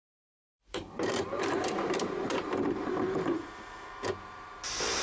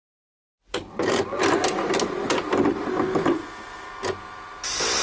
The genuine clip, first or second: second